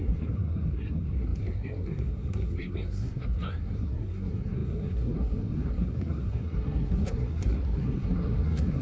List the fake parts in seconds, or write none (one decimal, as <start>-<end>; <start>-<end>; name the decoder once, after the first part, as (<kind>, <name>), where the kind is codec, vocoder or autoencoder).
0.0-8.8 (codec, SNAC)